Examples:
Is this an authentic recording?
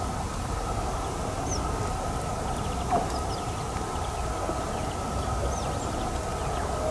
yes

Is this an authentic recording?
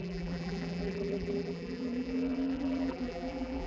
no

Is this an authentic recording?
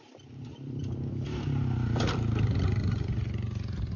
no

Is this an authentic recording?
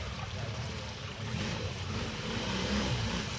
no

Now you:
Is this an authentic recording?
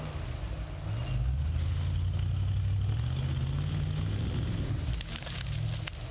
yes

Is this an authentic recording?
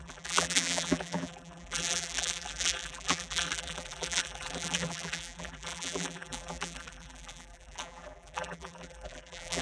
no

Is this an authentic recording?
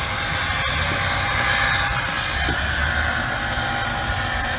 yes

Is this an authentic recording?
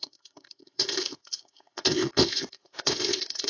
no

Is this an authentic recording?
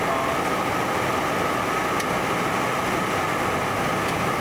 yes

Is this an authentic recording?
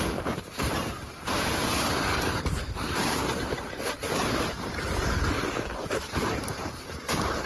no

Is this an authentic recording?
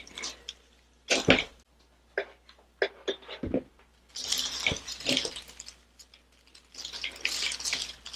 yes